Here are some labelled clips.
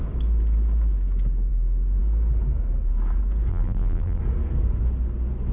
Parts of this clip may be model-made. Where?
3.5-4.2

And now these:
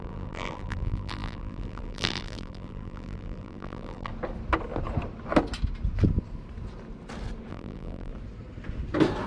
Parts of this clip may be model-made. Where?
0.0-4.1; 7.5-8.1